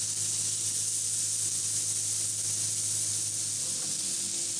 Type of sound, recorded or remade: recorded